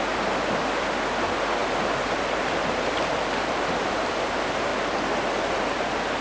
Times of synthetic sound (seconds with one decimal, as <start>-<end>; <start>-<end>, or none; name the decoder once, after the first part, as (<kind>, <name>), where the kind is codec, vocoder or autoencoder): none